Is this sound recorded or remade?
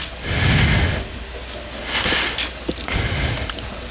recorded